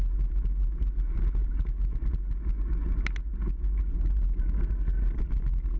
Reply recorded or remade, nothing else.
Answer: recorded